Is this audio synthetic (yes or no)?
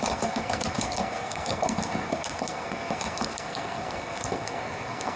yes